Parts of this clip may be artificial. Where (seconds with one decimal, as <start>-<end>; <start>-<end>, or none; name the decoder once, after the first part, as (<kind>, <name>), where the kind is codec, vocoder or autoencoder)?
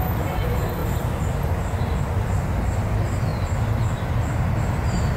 none